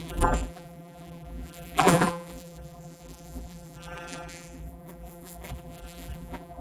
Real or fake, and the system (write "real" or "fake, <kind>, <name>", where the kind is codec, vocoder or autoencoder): fake, vocoder, BigVGAN v2